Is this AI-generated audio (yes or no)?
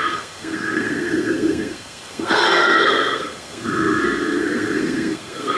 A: yes